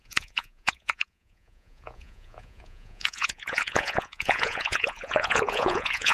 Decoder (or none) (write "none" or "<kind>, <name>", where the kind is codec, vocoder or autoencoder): vocoder, Vocos